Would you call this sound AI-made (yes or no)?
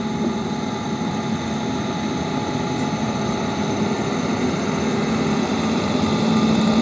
no